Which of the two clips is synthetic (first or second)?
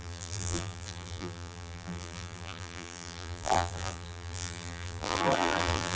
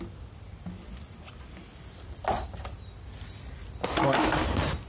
first